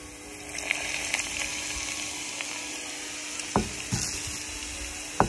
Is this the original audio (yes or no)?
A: yes